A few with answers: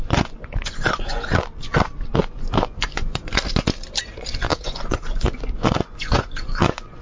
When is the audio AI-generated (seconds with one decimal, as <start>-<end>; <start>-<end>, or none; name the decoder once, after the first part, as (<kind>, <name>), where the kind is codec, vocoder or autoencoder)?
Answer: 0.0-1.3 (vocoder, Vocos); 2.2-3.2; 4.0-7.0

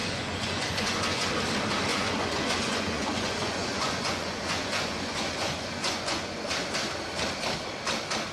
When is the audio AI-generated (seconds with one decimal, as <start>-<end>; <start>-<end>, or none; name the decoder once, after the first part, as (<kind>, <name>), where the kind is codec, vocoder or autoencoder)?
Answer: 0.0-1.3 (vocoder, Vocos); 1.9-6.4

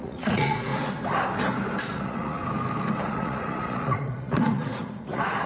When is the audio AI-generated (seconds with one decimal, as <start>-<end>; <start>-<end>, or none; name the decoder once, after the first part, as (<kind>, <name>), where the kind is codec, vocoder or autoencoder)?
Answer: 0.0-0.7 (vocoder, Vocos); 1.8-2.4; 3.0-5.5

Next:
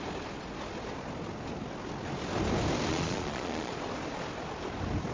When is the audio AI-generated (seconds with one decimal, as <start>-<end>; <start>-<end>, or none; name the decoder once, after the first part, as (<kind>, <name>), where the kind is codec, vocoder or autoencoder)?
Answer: 2.9-3.7 (vocoder, Vocos)

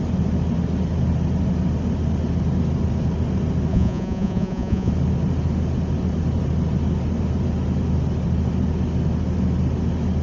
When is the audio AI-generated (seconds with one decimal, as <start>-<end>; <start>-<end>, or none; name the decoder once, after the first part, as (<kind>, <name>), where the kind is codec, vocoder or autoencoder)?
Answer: 3.7-4.9 (vocoder, Vocos)

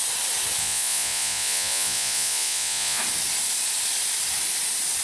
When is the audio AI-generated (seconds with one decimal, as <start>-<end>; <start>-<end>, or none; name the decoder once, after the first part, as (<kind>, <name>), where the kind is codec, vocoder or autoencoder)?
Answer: 0.6-3.0 (vocoder, Vocos)

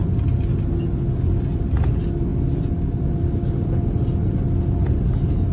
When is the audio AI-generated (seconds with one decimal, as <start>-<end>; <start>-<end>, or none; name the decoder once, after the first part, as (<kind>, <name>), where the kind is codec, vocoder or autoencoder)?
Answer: none